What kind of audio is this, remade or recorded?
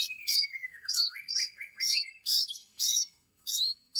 remade